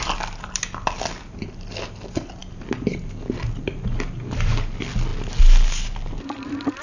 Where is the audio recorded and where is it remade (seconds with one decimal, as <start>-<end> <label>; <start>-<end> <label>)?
0.0-6.8 recorded